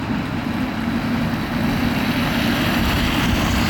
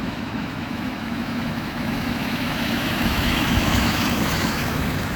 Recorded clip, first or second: first